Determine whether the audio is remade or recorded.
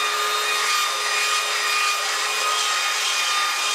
recorded